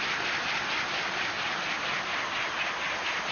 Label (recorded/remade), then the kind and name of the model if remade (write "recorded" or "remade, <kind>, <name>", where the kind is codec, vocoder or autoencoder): recorded